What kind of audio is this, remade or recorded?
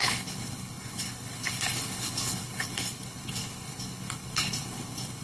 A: remade